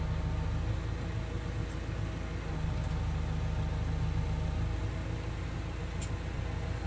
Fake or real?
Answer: real